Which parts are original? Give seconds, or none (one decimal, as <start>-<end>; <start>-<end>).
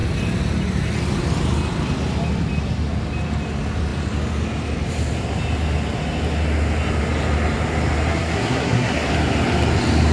0.0-8.1; 9.1-10.1